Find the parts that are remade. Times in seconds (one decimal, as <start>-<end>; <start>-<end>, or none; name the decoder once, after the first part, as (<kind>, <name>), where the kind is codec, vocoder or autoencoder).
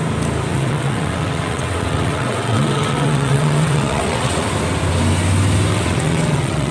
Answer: 0.5-4.5 (vocoder, WaveNeXt); 5.7-6.7